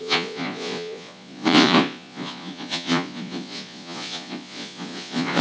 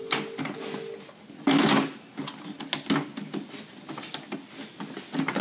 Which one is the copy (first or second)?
first